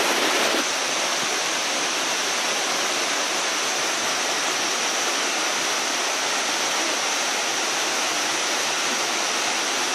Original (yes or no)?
yes